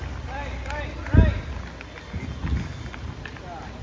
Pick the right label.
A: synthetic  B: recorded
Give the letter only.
B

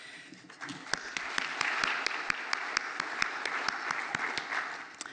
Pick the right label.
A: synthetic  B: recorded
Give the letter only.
B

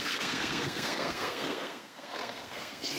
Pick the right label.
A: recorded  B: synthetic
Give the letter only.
B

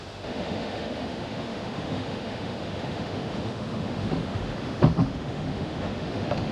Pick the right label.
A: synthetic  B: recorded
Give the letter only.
A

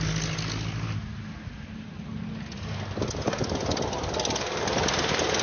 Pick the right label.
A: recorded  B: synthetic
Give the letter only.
A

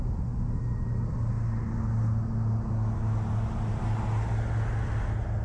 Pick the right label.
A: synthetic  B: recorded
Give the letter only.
B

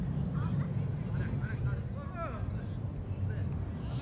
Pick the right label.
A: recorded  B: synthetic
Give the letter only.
A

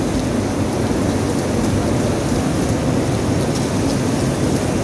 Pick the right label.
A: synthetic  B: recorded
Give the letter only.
B